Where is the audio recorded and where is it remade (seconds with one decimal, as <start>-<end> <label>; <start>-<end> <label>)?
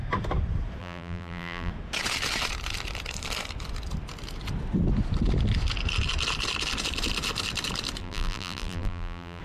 0.0-0.8 recorded; 0.8-1.7 remade; 1.7-8.0 recorded; 8.0-9.4 remade